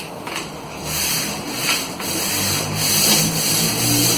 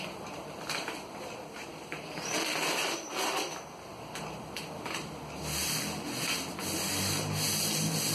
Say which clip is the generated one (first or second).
first